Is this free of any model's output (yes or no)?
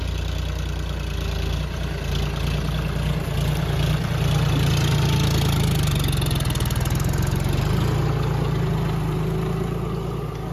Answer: yes